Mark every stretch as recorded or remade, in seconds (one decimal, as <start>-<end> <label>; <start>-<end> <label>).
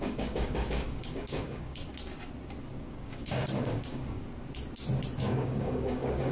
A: 0.0-1.8 remade; 1.8-2.8 recorded; 2.8-4.2 remade; 4.2-5.2 recorded; 5.2-6.3 remade